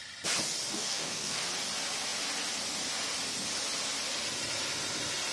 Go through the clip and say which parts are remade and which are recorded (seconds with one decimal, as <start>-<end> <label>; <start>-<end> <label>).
0.0-0.7 recorded; 0.7-1.4 remade; 1.4-5.3 recorded